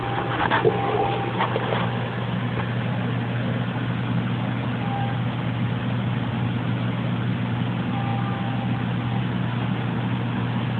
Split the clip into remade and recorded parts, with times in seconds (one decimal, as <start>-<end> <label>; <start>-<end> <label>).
0.0-10.8 recorded